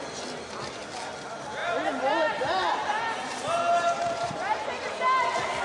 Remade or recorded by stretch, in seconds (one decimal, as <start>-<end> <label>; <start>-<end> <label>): 0.0-1.6 recorded; 1.6-5.0 remade; 5.0-5.6 recorded